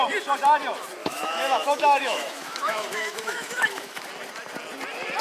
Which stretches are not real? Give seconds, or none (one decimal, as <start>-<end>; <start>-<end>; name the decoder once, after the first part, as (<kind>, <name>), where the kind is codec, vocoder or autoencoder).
1.0-4.1 (autoencoder, DAC-VAE)